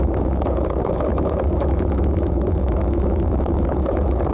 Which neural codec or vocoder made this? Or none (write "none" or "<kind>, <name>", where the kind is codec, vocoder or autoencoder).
autoencoder, DAC-VAE